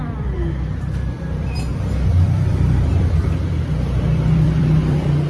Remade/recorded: remade